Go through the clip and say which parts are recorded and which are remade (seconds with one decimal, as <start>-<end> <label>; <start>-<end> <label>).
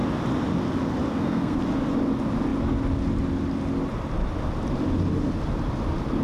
0.0-1.1 recorded; 1.1-1.6 remade; 1.6-6.2 recorded